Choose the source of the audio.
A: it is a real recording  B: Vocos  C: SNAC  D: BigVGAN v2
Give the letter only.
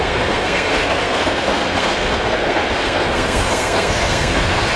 C